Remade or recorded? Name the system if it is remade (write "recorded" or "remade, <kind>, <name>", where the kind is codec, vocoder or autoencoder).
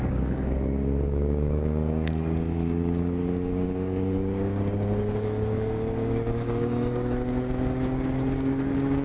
remade, codec, DAC